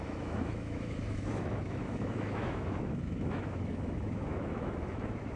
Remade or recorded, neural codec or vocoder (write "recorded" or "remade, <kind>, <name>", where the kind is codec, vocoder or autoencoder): remade, autoencoder, DAC-VAE